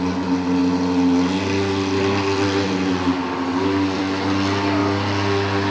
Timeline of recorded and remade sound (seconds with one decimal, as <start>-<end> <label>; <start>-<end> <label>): 0.0-5.7 recorded

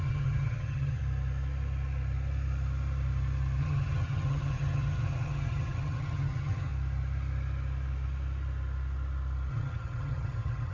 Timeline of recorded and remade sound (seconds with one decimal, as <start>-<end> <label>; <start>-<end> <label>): 0.0-1.0 remade; 1.0-3.6 recorded; 3.6-6.7 remade; 6.7-9.5 recorded; 9.5-10.7 remade

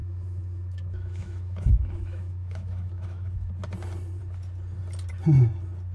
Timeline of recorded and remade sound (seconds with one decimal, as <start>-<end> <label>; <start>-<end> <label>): 0.0-3.5 remade; 3.5-5.9 recorded

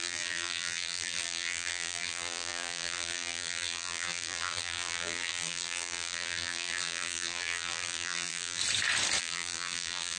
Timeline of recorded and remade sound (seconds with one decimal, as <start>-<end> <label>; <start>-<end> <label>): 0.0-8.6 remade; 8.6-9.2 recorded; 9.2-10.2 remade

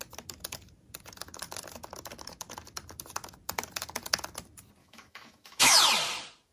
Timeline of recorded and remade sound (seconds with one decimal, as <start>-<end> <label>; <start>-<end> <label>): 0.0-4.8 recorded; 4.8-5.8 remade; 5.8-6.5 recorded

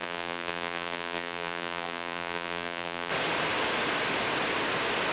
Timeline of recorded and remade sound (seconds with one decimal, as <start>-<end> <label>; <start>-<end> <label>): 0.0-3.1 remade; 3.1-5.1 recorded

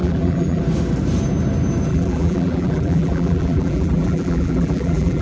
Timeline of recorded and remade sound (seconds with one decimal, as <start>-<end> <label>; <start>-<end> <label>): 0.0-0.6 remade; 0.6-1.9 recorded; 1.9-5.2 remade

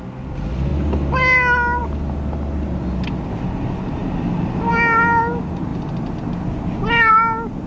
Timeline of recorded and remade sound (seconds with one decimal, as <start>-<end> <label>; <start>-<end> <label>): 0.0-7.7 recorded